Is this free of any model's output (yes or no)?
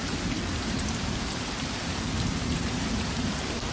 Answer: no